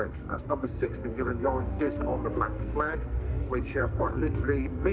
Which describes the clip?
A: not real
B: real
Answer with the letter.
A